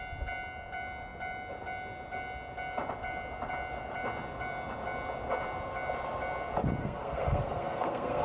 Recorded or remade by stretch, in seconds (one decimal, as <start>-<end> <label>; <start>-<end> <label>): 0.0-6.8 recorded; 6.8-8.2 remade